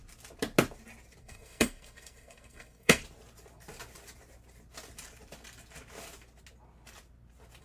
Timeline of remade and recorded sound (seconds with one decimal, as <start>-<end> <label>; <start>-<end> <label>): 0.0-1.2 recorded; 1.2-3.0 remade; 3.0-7.6 recorded